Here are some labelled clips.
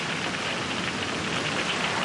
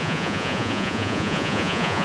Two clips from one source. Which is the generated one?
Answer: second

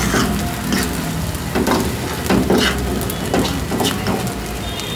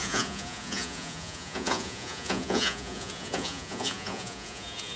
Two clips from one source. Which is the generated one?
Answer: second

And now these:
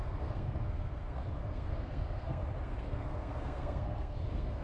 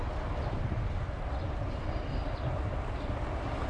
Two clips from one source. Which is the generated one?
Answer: first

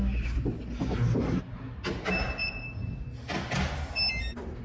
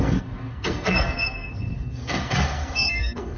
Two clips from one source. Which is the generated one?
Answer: second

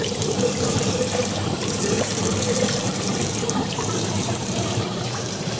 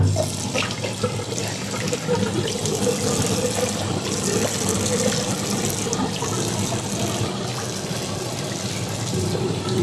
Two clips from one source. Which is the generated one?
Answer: first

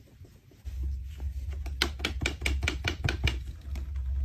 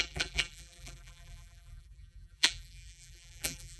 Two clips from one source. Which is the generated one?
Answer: second